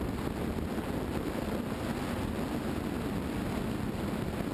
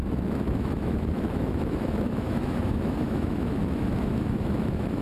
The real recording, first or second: first